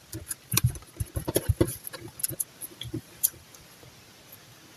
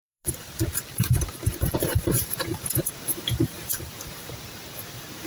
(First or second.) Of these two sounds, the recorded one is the first